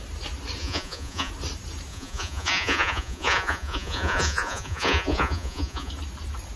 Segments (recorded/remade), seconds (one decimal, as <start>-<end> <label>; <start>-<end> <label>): 0.0-0.6 recorded; 0.6-1.3 remade; 1.3-1.9 recorded; 1.9-5.9 remade; 5.9-6.6 recorded